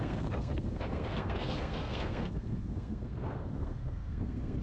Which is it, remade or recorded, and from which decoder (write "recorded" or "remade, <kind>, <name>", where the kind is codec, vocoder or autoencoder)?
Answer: remade, codec, SNAC